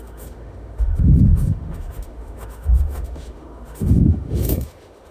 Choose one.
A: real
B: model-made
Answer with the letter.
B